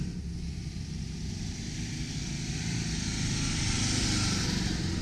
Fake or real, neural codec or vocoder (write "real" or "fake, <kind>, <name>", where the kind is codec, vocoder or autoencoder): real